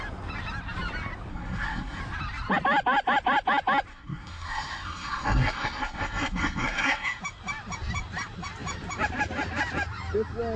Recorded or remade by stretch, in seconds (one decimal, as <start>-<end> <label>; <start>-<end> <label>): 0.0-1.3 recorded; 1.3-2.0 remade; 2.0-3.9 recorded; 3.9-7.2 remade; 7.2-10.6 recorded